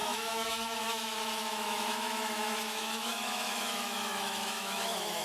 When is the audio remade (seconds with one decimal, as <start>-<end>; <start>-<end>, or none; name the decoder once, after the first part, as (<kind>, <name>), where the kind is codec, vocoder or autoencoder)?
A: 0.0-5.2 (autoencoder, DAC-VAE)